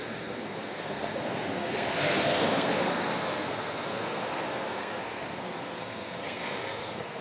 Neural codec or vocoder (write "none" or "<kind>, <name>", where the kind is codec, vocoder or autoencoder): codec, SNAC